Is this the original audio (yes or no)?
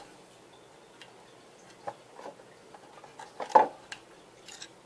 yes